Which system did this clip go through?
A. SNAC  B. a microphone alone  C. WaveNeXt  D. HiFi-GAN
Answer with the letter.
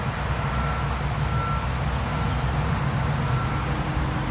B